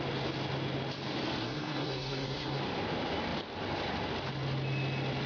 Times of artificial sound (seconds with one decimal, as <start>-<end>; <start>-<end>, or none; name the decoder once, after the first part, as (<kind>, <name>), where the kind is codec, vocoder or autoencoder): 1.4-2.6 (codec, SNAC)